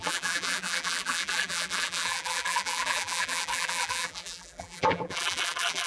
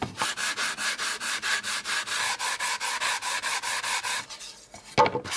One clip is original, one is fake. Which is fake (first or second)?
first